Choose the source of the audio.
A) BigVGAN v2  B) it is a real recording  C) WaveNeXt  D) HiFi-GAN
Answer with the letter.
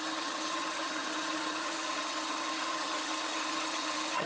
D